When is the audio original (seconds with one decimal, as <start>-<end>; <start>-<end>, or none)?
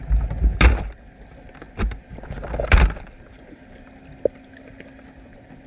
0.0-5.7